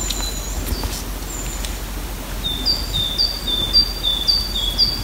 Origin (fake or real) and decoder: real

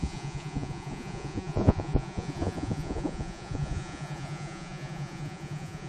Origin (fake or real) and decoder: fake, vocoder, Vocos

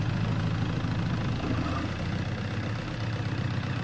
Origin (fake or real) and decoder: real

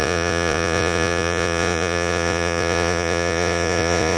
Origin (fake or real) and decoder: fake, vocoder, Vocos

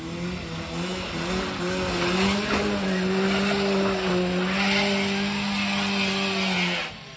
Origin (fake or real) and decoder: real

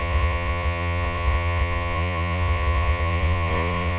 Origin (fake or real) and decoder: fake, vocoder, Vocos